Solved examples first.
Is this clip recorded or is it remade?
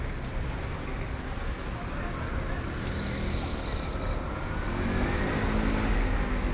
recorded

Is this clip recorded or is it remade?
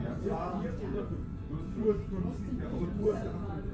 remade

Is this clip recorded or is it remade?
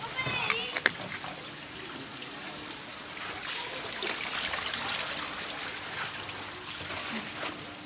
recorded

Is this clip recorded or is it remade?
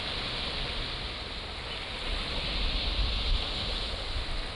recorded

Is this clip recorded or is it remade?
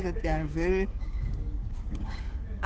remade